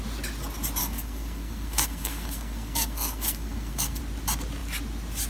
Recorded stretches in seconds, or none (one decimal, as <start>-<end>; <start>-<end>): 0.0-0.8; 4.0-5.3